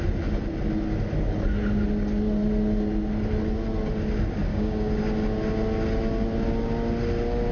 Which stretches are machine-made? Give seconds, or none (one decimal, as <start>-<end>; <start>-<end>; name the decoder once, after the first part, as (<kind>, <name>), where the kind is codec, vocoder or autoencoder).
4.5-5.0 (codec, DAC)